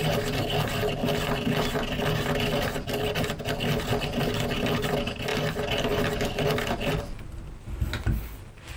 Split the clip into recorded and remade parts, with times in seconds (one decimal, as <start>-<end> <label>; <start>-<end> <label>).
0.0-8.8 recorded